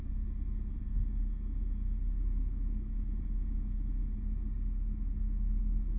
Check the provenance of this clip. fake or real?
real